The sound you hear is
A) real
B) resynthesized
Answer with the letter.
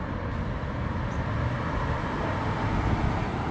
A